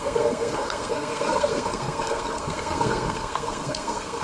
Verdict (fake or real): fake